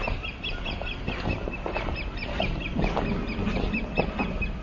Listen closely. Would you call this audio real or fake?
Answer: real